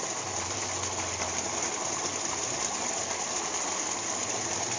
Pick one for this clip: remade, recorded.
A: recorded